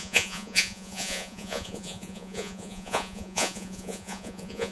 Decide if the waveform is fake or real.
fake